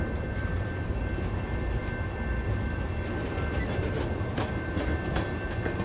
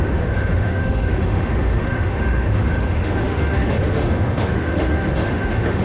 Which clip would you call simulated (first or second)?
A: second